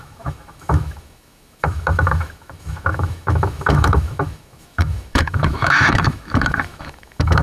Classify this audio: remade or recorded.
remade